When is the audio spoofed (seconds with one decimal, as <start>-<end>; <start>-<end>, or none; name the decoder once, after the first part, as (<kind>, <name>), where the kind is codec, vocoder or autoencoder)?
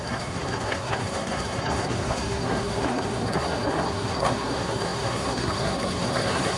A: 0.0-6.6 (codec, SNAC)